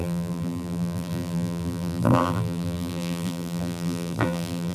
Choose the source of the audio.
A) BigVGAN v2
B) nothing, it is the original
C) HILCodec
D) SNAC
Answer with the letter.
A